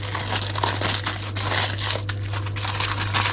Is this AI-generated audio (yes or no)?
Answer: no